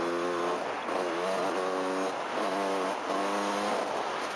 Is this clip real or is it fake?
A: real